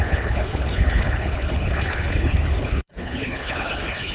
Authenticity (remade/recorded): remade